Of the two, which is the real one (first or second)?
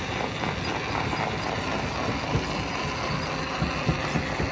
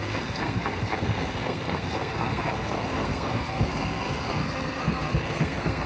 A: first